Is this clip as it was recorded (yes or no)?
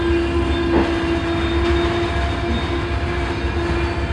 yes